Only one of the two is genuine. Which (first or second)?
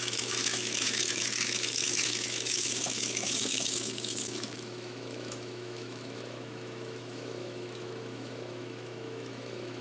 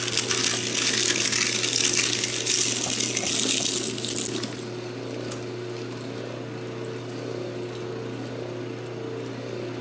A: second